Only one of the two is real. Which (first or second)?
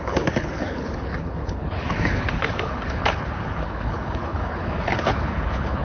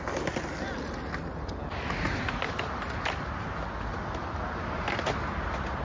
second